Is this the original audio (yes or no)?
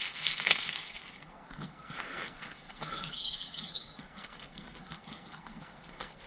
no